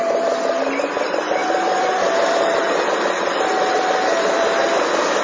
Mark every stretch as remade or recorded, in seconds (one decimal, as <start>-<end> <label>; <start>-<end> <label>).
0.0-5.2 recorded